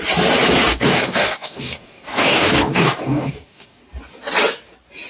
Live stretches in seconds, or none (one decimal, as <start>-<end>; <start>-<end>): 0.0-0.7; 3.8-5.1